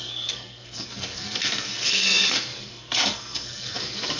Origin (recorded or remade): remade